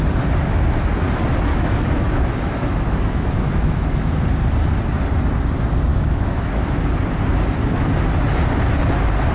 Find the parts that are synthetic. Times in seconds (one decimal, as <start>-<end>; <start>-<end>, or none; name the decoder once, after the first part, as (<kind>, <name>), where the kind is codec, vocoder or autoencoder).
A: 1.5-4.2 (autoencoder, DAC-VAE); 5.9-6.8